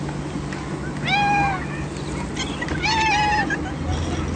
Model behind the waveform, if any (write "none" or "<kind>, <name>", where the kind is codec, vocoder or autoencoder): none